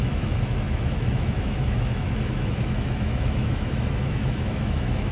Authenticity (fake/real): fake